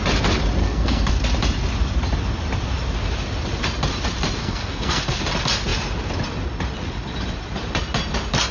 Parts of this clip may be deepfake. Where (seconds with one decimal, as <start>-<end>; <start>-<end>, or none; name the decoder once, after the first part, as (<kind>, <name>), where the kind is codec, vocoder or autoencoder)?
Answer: 0.6-1.1 (codec, SNAC); 4.4-5.2